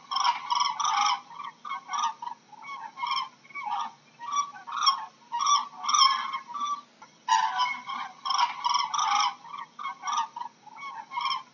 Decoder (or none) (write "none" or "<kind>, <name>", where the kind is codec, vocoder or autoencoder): none